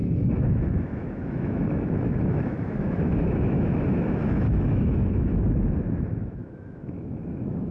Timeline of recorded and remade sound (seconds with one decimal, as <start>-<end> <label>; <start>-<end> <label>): 0.0-5.3 remade; 5.3-6.2 recorded; 6.2-7.7 remade